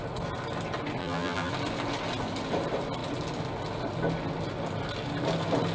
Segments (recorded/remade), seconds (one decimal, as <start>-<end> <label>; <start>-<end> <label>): 0.0-1.0 recorded; 1.0-1.5 remade; 1.5-5.7 recorded